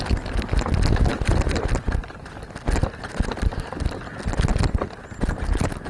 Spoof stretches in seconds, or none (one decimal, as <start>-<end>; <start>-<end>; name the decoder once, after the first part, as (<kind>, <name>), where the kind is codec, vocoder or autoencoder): none